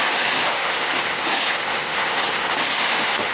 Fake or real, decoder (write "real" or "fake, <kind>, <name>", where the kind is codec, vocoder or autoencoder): fake, autoencoder, DAC-VAE